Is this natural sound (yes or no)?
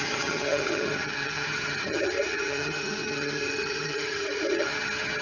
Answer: no